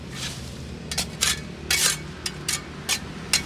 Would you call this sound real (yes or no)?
yes